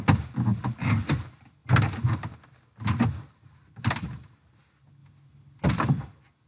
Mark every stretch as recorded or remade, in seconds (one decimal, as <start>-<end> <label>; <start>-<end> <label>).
0.0-6.5 recorded

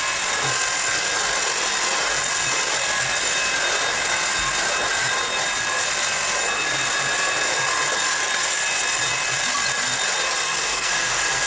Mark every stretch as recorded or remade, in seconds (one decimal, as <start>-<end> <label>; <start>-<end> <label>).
0.0-10.7 recorded; 10.7-11.5 remade